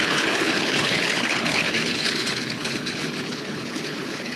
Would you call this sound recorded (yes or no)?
no